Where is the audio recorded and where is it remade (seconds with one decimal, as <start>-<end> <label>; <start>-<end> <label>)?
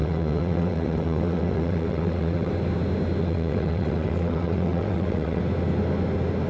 0.0-2.5 remade; 2.5-3.2 recorded; 3.2-5.4 remade; 5.4-6.5 recorded